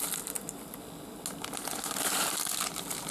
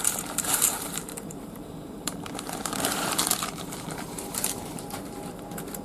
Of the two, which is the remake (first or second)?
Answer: second